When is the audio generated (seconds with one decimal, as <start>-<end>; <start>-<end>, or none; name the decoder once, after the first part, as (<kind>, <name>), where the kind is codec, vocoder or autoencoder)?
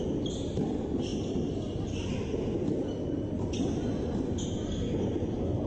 none